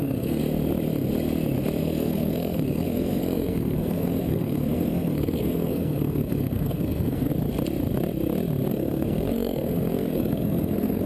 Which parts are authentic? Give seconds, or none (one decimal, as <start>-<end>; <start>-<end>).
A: 0.4-1.8; 7.3-8.7